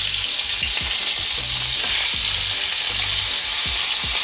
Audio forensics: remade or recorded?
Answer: recorded